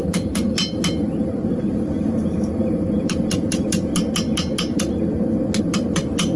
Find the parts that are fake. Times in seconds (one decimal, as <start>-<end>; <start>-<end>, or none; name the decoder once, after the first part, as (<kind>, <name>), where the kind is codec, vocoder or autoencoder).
0.0-3.9 (vocoder, BigVGAN v2); 5.6-6.4